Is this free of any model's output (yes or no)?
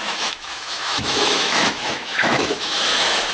no